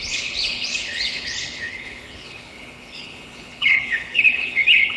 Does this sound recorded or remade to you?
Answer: remade